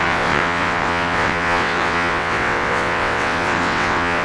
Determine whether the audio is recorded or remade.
remade